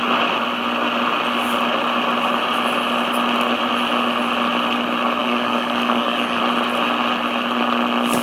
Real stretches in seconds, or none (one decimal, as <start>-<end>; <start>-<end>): 0.0-5.2; 6.4-8.2